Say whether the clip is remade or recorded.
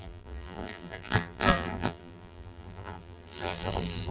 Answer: remade